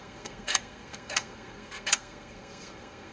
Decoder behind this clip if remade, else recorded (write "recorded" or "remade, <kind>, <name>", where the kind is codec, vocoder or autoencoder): remade, codec, SNAC